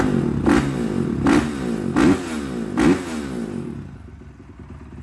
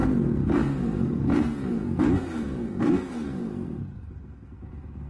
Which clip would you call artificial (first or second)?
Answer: second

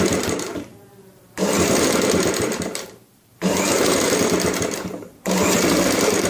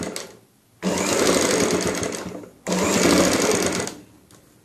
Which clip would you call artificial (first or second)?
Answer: first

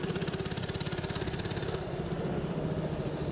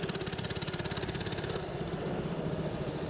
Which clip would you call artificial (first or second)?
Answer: second